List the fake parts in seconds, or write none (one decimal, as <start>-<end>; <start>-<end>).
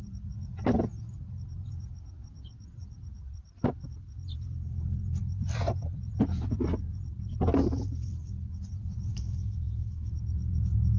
9.1-10.1